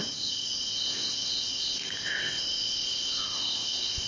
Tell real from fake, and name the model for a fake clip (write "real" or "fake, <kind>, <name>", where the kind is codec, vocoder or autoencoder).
fake, codec, ZipCodec